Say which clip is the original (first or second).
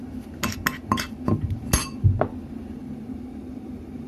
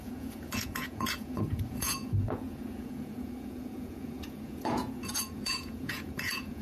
first